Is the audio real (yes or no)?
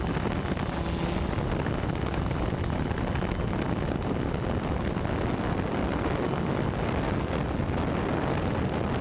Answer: yes